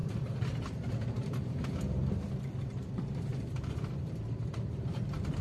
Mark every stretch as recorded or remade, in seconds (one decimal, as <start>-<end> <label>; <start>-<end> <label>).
0.0-5.4 remade